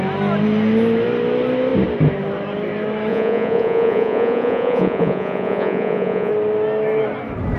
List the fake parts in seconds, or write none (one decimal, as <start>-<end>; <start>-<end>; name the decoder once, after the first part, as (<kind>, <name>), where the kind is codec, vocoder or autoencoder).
3.1-6.3 (vocoder, Vocos)